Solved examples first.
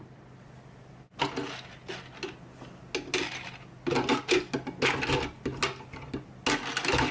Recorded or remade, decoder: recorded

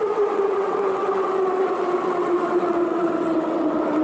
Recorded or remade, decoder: remade, vocoder, WaveNeXt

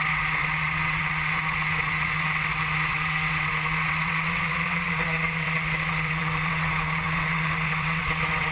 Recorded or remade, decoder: remade, vocoder, WaveNeXt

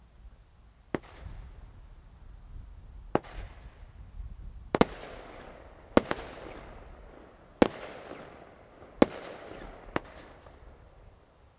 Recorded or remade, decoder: recorded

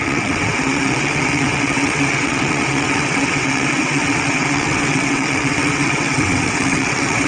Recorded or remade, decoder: remade, vocoder, WaveNeXt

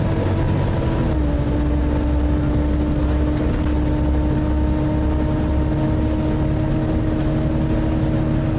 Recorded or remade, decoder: recorded